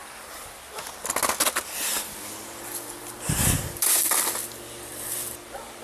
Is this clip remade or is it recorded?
recorded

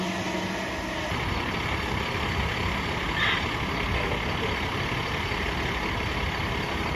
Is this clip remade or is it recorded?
recorded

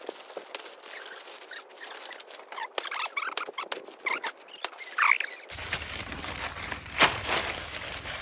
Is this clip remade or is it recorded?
recorded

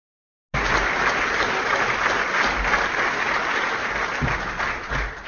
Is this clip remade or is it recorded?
recorded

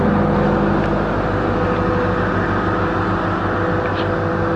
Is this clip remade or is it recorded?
recorded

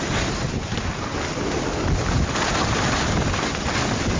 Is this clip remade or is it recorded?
recorded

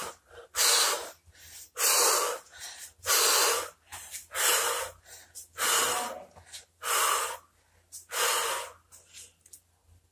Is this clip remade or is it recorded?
recorded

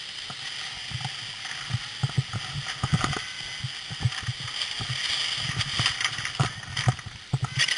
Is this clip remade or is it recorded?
recorded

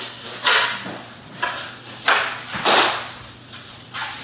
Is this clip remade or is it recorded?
recorded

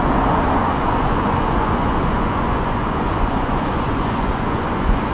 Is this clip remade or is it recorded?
remade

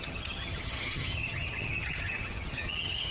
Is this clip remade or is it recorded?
remade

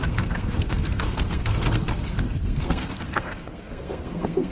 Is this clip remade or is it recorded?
remade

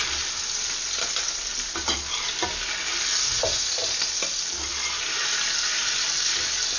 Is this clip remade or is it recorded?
recorded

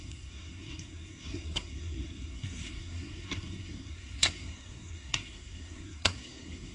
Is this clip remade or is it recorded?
remade